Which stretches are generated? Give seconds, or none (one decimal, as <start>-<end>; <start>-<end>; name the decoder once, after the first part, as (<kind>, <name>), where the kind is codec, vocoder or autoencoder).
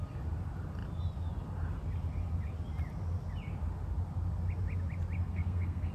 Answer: 5.2-5.9 (codec, SNAC)